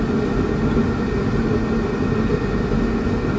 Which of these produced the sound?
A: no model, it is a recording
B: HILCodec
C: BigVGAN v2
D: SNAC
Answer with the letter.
A